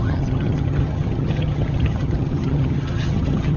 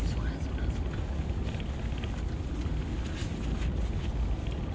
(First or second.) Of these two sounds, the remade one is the first